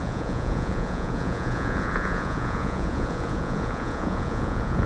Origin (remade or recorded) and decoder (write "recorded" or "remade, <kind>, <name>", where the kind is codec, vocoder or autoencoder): remade, vocoder, Vocos